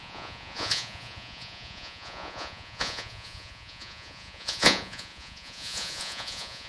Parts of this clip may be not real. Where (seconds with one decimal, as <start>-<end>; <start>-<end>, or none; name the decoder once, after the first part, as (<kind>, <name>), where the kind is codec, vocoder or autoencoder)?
0.0-6.7 (vocoder, Vocos)